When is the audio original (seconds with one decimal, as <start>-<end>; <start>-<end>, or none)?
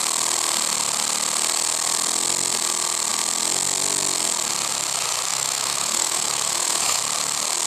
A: 0.0-5.3; 7.0-7.7